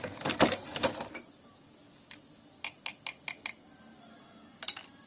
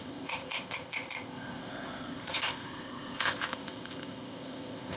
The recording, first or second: first